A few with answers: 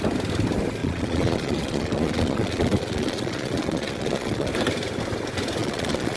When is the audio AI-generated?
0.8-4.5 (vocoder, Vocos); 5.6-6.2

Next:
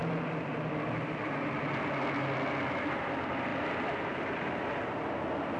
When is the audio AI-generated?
none

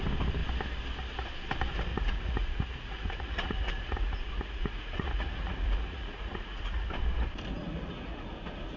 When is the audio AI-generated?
1.9-6.9 (vocoder, Vocos); 7.6-8.3

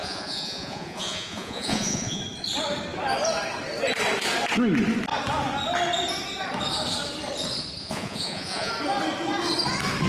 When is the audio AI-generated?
0.0-2.2 (vocoder, Vocos); 7.8-8.7

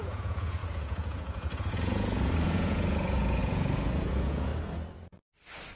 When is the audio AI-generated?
0.0-4.5 (vocoder, Vocos)

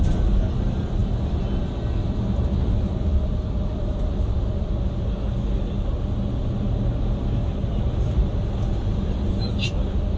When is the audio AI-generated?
none

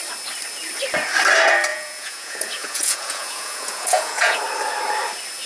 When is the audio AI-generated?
1.7-4.4 (vocoder, Vocos)